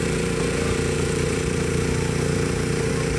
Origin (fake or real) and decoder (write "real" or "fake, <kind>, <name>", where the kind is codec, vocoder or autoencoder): fake, vocoder, BigVGAN v2